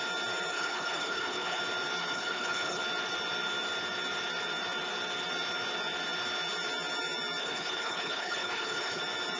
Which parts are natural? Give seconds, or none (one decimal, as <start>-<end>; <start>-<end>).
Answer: 0.0-0.5; 1.6-2.0; 2.8-7.4; 9.0-9.4